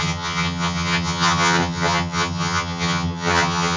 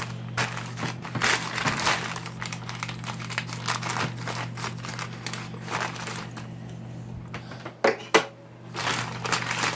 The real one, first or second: second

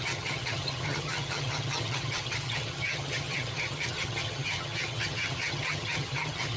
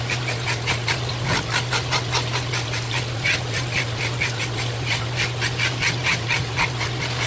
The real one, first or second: second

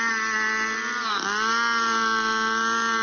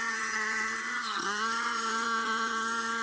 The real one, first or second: first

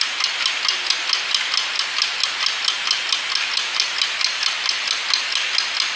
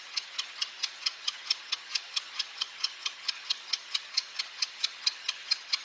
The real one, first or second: first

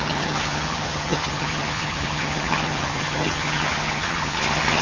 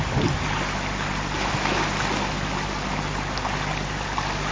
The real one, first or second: second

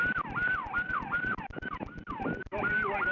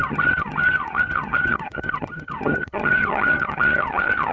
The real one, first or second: first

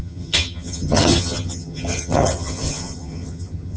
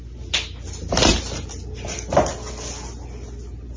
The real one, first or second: second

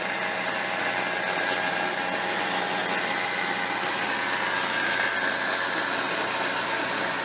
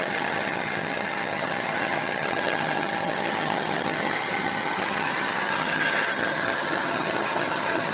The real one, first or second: first